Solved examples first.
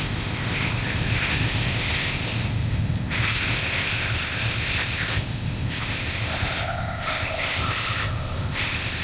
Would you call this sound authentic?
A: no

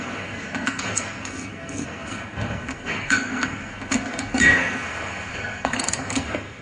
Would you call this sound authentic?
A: no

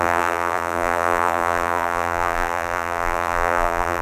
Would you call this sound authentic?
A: no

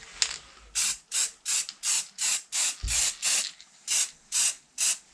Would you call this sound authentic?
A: yes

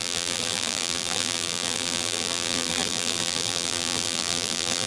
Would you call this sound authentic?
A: no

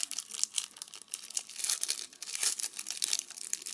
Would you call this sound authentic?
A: no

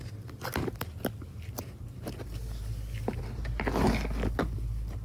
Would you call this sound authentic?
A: yes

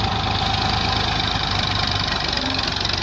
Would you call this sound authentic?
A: yes